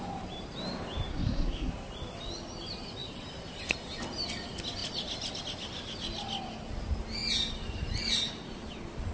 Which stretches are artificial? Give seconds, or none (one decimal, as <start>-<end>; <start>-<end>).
1.1-1.7